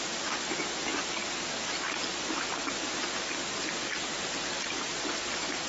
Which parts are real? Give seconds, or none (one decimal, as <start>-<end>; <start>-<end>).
0.0-5.7